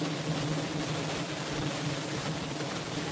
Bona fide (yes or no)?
yes